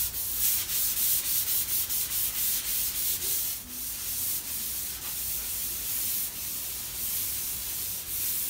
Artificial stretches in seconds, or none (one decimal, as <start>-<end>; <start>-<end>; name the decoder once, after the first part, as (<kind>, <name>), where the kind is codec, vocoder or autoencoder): 5.6-8.5 (vocoder, BigVGAN v2)